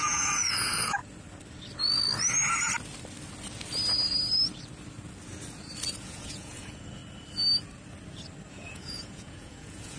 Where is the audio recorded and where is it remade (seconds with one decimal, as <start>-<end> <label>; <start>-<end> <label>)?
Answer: 0.0-1.0 remade; 1.0-6.0 recorded; 6.0-7.0 remade; 7.0-8.5 recorded; 8.5-10.0 remade